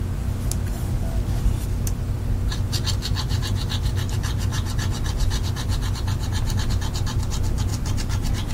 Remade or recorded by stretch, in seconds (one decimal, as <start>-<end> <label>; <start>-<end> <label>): 0.0-4.5 recorded; 4.5-6.7 remade; 6.7-7.7 recorded; 7.7-8.5 remade